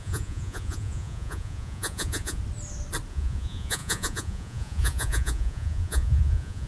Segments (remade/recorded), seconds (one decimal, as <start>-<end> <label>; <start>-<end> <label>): 0.0-2.4 remade; 2.4-3.1 recorded; 3.1-6.7 remade